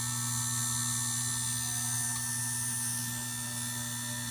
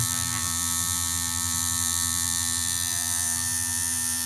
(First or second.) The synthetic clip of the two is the second